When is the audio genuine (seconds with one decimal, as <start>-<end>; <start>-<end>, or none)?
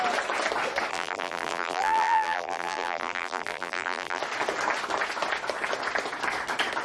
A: 0.0-0.9; 4.2-6.8